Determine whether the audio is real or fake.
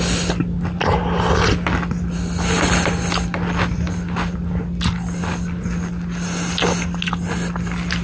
real